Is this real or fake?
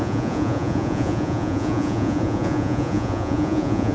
fake